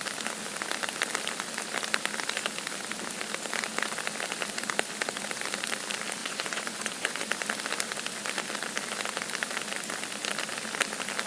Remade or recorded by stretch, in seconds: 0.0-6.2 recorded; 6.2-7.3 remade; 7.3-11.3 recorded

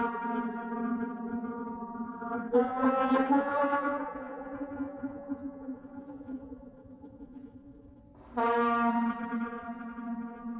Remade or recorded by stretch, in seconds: 0.0-8.0 remade; 8.0-8.9 recorded; 8.9-10.6 remade